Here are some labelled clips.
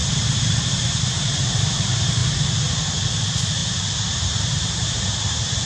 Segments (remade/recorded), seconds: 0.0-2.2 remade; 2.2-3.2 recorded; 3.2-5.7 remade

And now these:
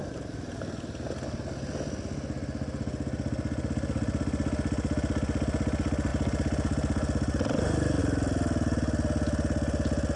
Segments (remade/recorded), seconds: 0.0-10.2 recorded

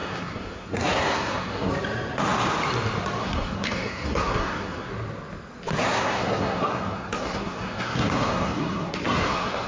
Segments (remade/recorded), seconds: 0.0-1.7 remade; 1.7-3.2 recorded; 3.2-4.9 remade; 4.9-5.8 recorded; 5.8-9.7 remade

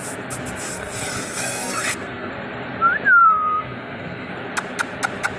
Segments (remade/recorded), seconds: 0.0-0.7 recorded; 0.7-2.3 remade; 2.3-3.2 recorded; 3.2-4.3 remade; 4.3-5.4 recorded

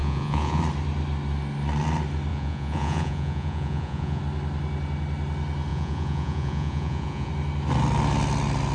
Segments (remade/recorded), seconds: 0.0-0.6 remade; 0.6-2.3 recorded; 2.3-4.2 remade; 4.2-5.7 recorded; 5.7-7.3 remade; 7.3-8.7 recorded

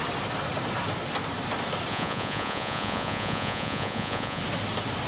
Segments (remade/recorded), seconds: 0.0-1.9 recorded; 1.9-4.4 remade; 4.4-5.1 recorded